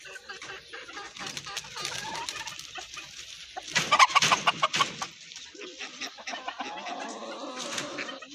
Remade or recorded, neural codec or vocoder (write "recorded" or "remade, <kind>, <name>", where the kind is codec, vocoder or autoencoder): recorded